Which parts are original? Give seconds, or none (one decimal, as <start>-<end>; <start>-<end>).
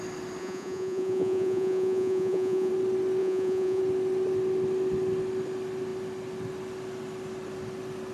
0.0-0.4; 2.7-3.2; 3.8-8.1